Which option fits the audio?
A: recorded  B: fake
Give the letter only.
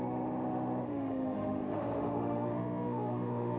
B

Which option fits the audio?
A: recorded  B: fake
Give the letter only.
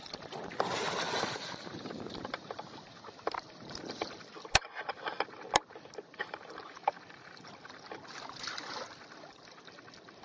A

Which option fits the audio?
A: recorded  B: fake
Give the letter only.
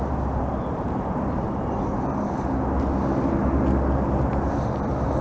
A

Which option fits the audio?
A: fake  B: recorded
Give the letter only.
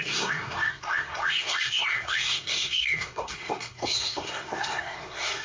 A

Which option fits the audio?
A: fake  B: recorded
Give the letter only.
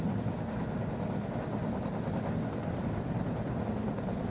B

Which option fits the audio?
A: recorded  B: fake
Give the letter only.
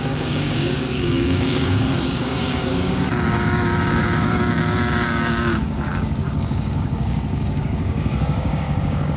B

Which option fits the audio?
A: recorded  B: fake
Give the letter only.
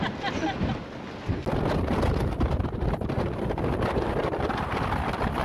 A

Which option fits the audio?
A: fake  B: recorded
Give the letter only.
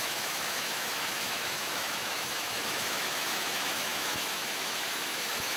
A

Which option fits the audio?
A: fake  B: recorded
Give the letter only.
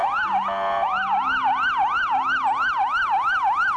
B